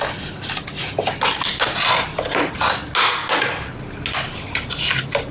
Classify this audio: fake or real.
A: real